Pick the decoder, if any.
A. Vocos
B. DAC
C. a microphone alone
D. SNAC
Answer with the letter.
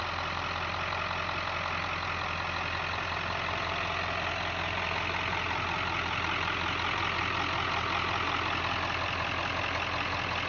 C